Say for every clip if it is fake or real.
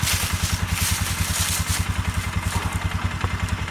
real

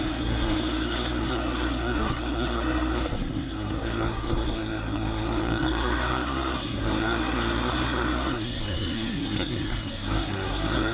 fake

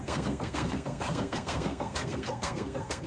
fake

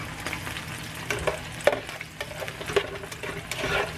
real